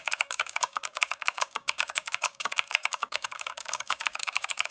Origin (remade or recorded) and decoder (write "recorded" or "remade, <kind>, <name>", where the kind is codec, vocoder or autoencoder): remade, codec, DAC